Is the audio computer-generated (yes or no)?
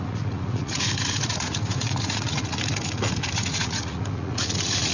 yes